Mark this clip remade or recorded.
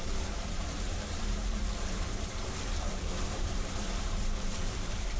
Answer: remade